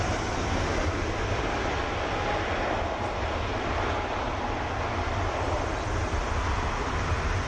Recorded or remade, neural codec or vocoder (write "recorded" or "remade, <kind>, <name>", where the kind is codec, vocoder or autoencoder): recorded